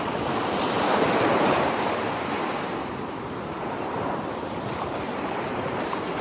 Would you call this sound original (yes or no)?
yes